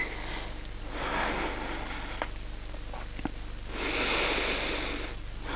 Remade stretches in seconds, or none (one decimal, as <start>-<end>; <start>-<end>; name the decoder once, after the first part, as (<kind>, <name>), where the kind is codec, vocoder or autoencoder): none